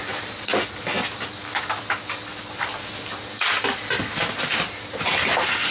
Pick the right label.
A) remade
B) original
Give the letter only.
B